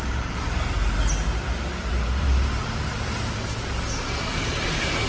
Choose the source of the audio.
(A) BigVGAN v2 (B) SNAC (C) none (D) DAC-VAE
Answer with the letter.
A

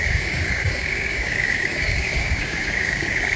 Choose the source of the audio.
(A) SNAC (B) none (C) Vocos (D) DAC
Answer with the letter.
D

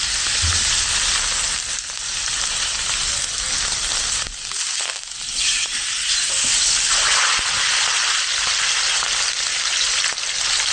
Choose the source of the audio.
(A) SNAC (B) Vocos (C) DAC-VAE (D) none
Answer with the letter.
D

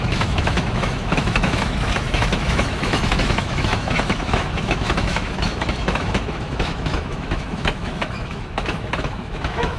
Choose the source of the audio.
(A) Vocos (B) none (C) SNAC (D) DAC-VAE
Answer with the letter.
D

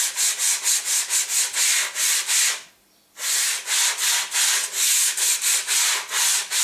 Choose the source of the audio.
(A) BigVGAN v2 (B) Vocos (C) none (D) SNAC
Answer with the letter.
C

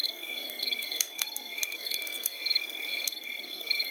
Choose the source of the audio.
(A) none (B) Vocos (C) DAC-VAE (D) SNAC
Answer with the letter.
D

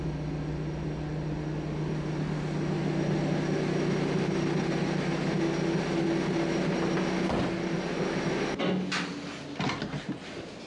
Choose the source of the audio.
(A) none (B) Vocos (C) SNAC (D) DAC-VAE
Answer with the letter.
A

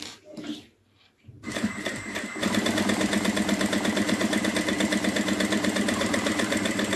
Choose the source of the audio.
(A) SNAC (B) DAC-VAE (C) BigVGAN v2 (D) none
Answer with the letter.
C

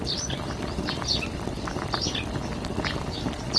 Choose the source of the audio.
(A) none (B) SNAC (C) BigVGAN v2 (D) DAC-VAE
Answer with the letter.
A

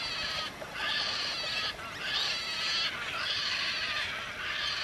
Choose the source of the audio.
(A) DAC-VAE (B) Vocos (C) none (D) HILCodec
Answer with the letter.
C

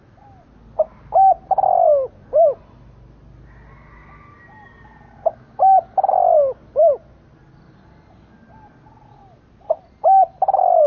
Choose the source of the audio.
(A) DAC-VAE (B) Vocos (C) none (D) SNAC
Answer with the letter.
C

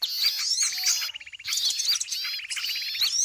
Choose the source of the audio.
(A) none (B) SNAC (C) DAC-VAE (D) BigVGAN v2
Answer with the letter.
A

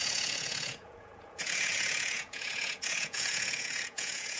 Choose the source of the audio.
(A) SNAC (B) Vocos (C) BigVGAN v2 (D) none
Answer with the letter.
B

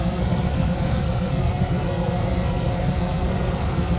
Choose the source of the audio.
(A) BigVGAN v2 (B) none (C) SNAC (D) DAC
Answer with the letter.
C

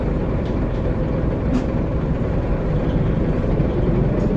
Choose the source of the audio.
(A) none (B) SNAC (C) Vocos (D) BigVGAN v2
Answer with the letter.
D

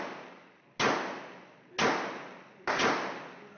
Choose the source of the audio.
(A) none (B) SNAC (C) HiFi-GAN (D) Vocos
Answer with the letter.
A